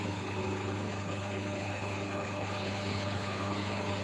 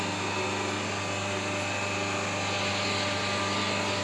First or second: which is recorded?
second